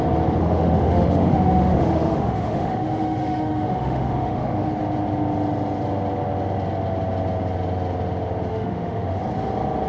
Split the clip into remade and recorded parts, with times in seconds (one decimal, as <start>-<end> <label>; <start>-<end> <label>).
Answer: 0.0-0.4 recorded; 0.4-4.7 remade; 4.7-8.5 recorded; 8.5-9.2 remade; 9.2-9.9 recorded